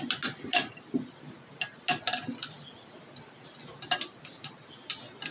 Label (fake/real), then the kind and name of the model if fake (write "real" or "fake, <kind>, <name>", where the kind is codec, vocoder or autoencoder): real